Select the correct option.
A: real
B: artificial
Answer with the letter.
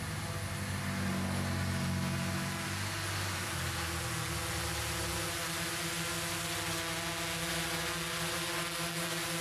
A